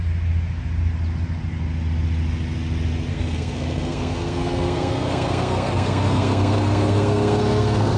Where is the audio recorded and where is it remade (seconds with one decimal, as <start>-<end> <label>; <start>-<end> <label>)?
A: 0.0-3.1 recorded; 3.1-8.0 remade